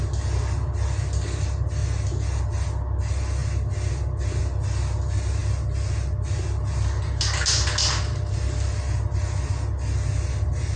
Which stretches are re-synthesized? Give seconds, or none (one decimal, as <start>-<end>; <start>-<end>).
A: none